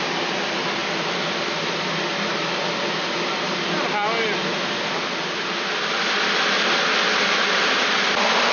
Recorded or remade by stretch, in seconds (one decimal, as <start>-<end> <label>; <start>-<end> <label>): 0.0-8.5 recorded